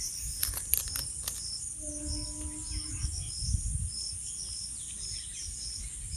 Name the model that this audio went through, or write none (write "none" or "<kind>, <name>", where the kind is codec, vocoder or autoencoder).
none